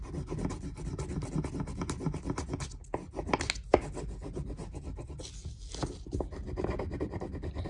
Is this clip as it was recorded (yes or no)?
yes